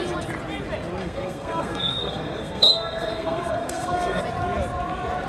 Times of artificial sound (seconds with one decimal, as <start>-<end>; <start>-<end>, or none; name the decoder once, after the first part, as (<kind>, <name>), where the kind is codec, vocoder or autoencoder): 1.0-4.2 (codec, SNAC)